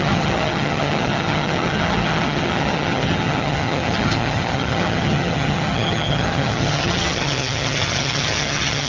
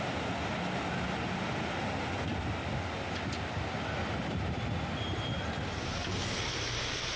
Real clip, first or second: second